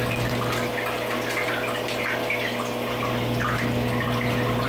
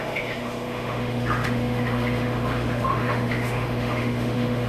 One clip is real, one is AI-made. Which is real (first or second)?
first